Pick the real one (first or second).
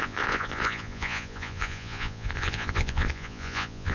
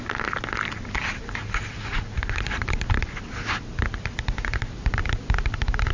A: second